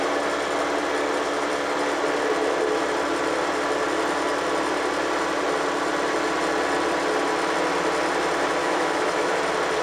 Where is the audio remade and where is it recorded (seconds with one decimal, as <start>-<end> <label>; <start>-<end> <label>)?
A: 0.0-8.6 recorded; 8.6-9.4 remade; 9.4-9.8 recorded